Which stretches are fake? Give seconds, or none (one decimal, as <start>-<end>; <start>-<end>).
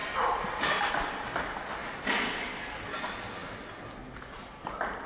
none